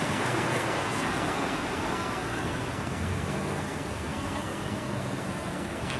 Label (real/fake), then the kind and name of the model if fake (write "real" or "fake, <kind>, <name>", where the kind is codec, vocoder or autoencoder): fake, codec, SNAC